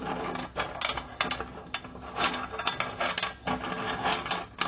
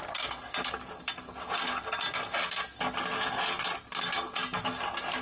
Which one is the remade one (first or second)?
second